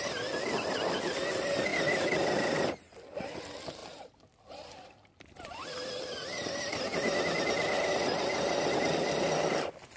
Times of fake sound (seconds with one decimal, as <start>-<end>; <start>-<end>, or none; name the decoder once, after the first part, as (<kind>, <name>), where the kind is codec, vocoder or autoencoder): 1.7-3.4 (vocoder, BigVGAN v2); 3.8-5.7